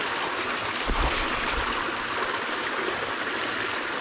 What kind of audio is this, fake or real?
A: real